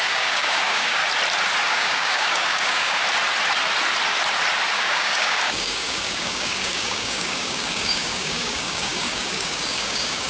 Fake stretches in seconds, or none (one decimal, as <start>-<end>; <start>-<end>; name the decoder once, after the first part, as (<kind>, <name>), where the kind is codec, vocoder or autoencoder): 0.0-1.0 (codec, DAC); 1.7-3.0; 4.7-10.3